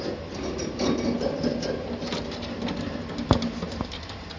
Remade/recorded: recorded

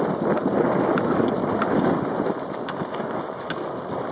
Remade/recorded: recorded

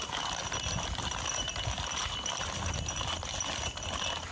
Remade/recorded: recorded